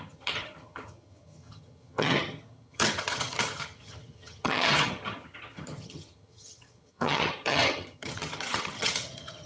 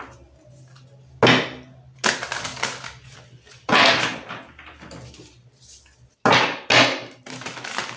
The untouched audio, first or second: second